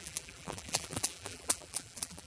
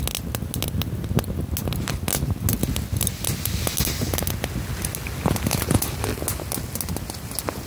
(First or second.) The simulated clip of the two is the first